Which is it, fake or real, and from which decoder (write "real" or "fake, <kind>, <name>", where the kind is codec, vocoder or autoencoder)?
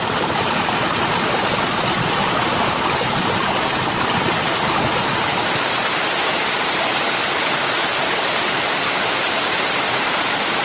fake, vocoder, BigVGAN v2